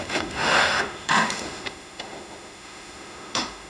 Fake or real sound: fake